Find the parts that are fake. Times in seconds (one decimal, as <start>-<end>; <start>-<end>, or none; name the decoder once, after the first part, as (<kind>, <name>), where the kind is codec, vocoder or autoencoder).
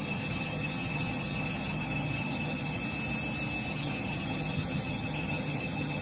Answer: 0.0-2.8 (vocoder, HiFi-GAN); 3.7-6.0